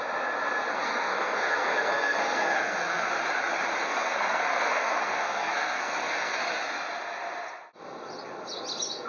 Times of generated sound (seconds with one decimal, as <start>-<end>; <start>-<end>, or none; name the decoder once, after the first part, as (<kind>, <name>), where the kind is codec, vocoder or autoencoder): 0.7-3.1 (codec, SNAC); 3.8-6.4